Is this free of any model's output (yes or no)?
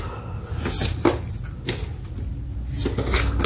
yes